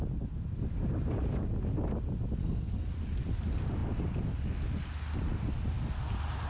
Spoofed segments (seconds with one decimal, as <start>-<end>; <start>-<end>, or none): 2.4-2.9

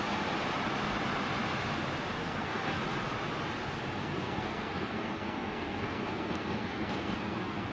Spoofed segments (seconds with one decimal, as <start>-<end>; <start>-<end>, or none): 2.2-2.8; 4.0-7.7

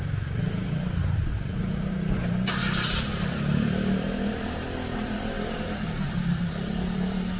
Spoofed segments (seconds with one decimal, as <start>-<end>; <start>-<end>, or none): 0.0-7.4

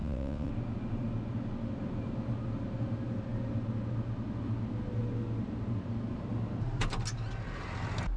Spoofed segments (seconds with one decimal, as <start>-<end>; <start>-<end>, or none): 0.0-0.5

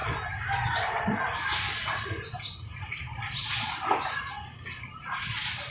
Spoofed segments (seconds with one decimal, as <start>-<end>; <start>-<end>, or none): none